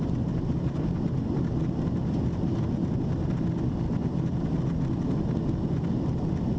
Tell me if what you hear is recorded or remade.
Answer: recorded